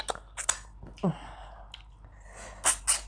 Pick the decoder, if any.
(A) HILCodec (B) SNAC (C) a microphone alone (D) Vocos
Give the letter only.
C